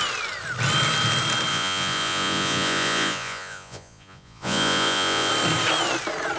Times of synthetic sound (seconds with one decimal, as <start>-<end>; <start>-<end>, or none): 1.5-5.3